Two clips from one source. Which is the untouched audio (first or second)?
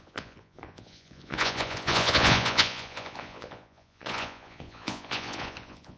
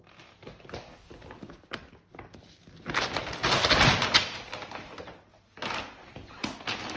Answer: second